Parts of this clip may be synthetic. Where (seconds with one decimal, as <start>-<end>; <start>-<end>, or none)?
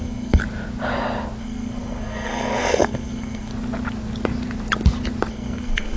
0.0-0.4; 1.4-3.5; 5.3-6.0